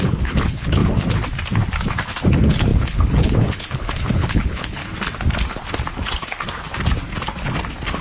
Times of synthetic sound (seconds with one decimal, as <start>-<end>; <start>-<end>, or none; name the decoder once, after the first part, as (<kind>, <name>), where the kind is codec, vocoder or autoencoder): 0.0-0.8 (codec, HILCodec); 2.3-4.8

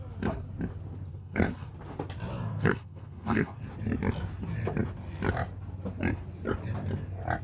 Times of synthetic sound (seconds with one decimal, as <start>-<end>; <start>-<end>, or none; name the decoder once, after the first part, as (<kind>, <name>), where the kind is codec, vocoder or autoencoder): 1.1-1.7 (codec, SNAC); 2.5-3.6